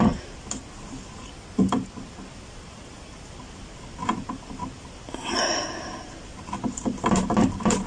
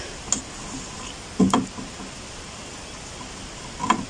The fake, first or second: first